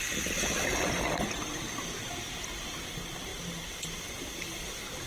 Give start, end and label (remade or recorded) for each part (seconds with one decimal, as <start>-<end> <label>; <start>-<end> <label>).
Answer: 0.0-5.1 recorded

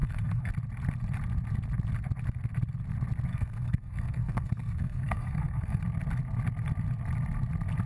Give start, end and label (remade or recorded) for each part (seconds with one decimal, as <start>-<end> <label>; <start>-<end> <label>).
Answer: 0.0-0.5 remade; 0.5-3.3 recorded; 3.3-5.8 remade; 5.8-7.9 recorded

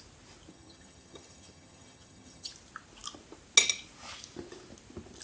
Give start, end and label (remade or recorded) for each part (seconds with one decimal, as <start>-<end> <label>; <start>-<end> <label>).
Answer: 0.0-0.5 recorded; 0.5-2.5 remade; 2.5-5.2 recorded

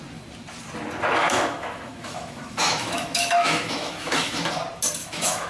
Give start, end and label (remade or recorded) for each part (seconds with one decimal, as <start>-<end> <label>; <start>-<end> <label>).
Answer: 0.0-1.2 recorded; 1.2-4.5 remade; 4.5-5.0 recorded; 5.0-5.5 remade

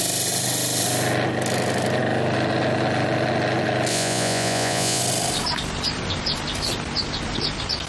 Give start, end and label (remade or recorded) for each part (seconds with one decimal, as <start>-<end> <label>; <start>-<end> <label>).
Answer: 0.0-3.9 recorded; 3.9-5.0 remade; 5.0-7.9 recorded